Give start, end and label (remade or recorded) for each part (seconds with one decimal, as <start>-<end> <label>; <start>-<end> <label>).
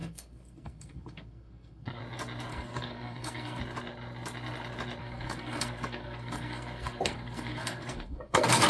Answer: 0.0-2.0 remade; 2.0-2.5 recorded; 2.5-3.6 remade; 3.6-5.0 recorded; 5.0-8.7 remade